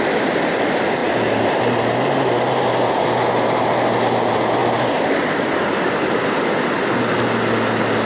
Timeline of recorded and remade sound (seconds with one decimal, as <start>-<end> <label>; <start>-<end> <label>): 0.0-8.1 recorded